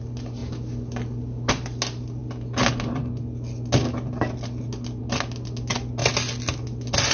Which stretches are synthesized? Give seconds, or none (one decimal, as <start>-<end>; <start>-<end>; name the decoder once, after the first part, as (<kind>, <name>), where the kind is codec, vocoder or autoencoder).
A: none